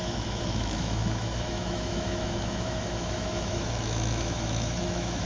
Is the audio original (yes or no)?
no